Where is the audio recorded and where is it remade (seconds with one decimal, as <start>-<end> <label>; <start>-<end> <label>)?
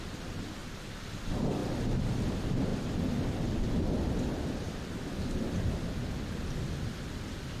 0.0-0.6 recorded; 0.6-1.1 remade; 1.1-7.6 recorded